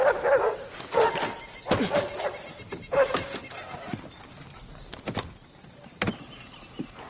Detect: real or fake real